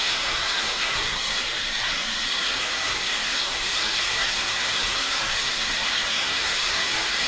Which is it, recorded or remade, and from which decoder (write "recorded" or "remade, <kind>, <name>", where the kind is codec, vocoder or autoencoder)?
remade, codec, SNAC